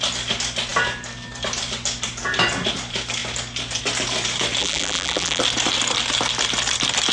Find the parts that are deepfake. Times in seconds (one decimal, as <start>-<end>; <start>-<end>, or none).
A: 4.6-5.4